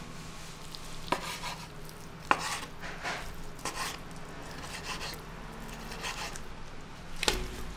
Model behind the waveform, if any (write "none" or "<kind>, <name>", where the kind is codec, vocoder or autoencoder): none